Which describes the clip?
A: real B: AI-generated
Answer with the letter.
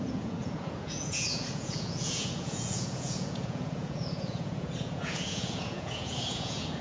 B